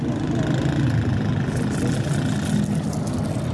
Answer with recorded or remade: recorded